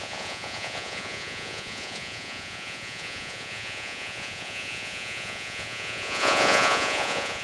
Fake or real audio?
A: fake